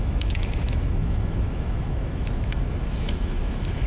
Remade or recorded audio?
remade